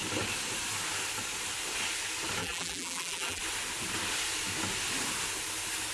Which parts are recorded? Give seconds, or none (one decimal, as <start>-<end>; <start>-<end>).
0.0-2.4; 3.4-5.9